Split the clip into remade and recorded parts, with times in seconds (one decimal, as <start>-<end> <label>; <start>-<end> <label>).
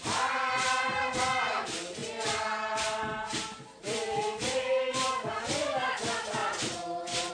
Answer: 0.0-7.3 recorded